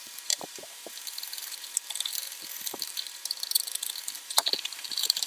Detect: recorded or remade remade